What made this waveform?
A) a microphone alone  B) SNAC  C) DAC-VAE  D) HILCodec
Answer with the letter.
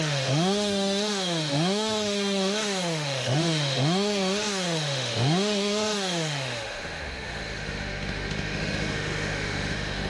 C